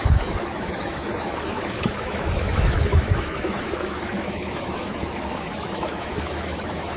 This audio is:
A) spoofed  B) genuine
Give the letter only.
A